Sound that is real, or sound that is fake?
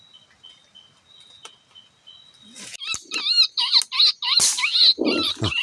real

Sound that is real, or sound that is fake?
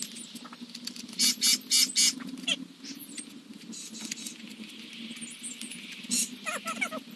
real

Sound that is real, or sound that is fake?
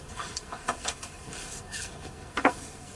fake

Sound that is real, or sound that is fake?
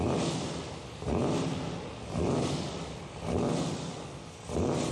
real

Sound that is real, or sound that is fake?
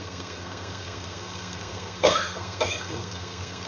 fake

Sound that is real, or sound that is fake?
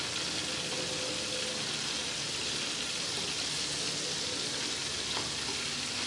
real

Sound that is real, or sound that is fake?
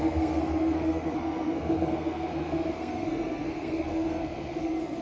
fake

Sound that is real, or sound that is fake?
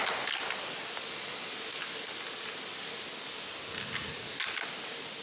real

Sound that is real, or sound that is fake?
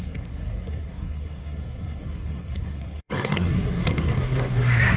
fake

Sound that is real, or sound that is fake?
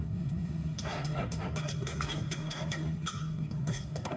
fake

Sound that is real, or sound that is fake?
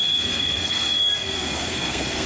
fake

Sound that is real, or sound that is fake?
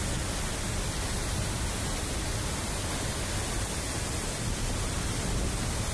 real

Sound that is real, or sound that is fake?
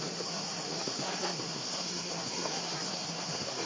fake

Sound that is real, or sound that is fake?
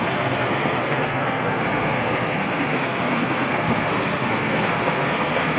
fake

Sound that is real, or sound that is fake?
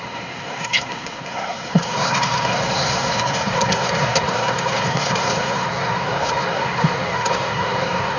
fake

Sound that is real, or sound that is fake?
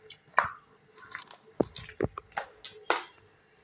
real